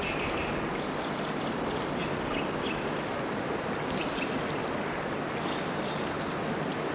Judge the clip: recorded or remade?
recorded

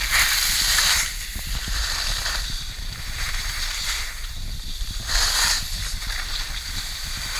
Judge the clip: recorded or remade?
remade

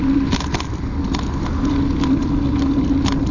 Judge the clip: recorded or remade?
recorded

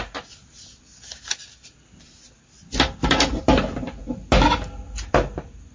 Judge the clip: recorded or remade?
recorded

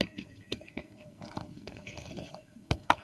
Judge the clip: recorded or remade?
remade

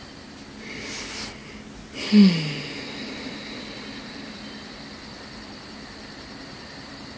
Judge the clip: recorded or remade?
recorded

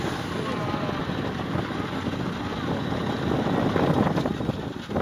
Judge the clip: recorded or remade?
recorded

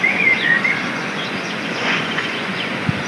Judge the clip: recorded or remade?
remade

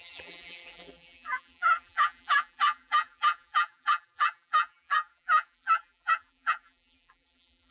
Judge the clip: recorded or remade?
remade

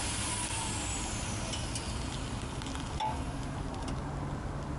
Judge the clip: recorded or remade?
recorded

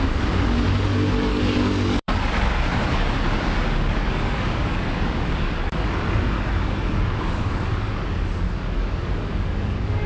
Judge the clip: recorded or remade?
remade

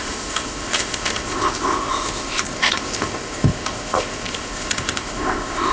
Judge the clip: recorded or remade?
remade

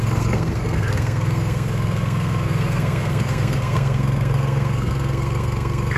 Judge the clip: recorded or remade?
remade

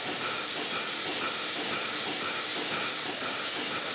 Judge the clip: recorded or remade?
recorded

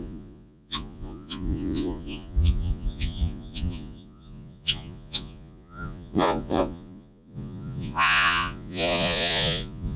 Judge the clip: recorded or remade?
remade